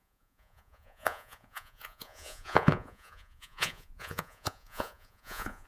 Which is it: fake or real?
fake